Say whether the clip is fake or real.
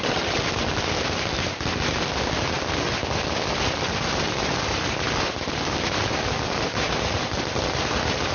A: real